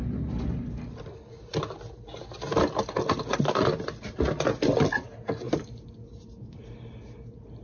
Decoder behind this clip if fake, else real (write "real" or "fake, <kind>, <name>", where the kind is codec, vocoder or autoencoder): real